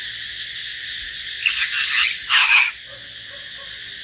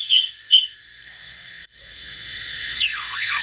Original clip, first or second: first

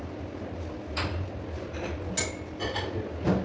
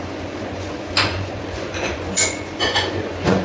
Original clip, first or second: first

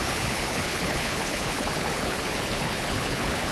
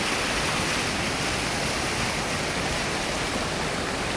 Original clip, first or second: second